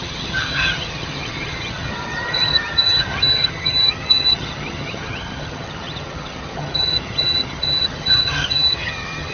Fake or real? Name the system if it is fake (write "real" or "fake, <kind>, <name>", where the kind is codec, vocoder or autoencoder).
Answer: fake, vocoder, HiFi-GAN